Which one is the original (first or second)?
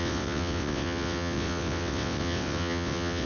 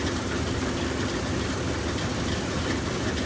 second